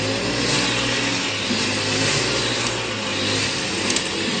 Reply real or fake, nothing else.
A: real